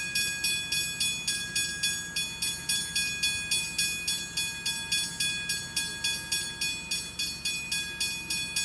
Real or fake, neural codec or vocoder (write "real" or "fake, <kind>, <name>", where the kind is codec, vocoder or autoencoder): real